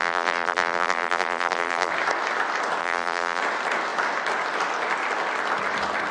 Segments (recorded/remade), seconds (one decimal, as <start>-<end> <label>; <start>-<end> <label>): 0.0-1.9 remade; 1.9-2.8 recorded; 2.8-3.4 remade; 3.4-6.1 recorded

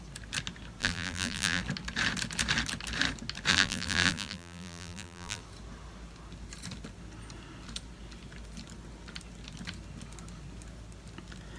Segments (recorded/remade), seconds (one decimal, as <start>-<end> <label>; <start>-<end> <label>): 0.0-0.8 recorded; 0.8-1.6 remade; 1.6-3.5 recorded; 3.5-5.4 remade; 5.4-11.6 recorded

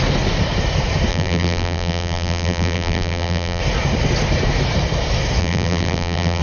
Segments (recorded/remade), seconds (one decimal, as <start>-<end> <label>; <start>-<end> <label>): 0.0-1.1 recorded; 1.1-3.6 remade; 3.6-5.4 recorded; 5.4-6.4 remade

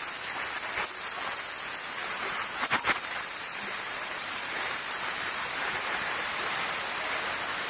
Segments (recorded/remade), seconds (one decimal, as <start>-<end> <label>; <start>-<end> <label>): 0.0-2.0 recorded; 2.0-6.5 remade; 6.5-7.7 recorded

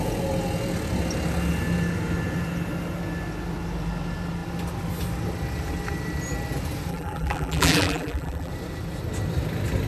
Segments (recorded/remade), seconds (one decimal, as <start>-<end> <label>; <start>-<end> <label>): 0.0-6.9 recorded; 6.9-8.5 remade; 8.5-9.9 recorded

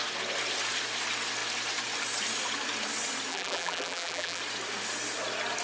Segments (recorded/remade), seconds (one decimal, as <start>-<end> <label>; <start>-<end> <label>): 0.0-3.3 recorded; 3.3-4.4 remade; 4.4-5.6 recorded

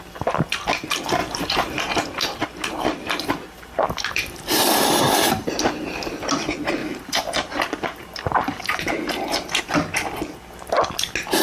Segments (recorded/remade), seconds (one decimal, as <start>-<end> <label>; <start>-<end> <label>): 0.0-1.2 recorded; 1.2-1.8 remade; 1.8-2.4 recorded; 2.4-4.6 remade; 4.6-6.8 recorded; 6.8-9.6 remade; 9.6-11.4 recorded

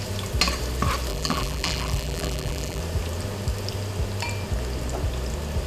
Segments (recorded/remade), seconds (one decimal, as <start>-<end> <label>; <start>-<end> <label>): 0.0-1.1 recorded; 1.1-2.8 remade; 2.8-5.7 recorded